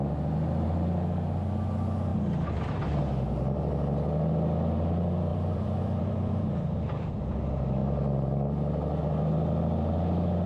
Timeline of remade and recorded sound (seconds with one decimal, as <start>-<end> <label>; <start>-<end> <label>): 0.0-2.1 recorded; 2.1-3.0 remade; 3.0-5.3 recorded; 5.3-7.1 remade; 7.1-7.8 recorded; 7.8-9.0 remade; 9.0-10.5 recorded